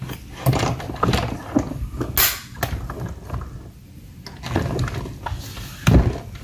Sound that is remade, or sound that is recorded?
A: recorded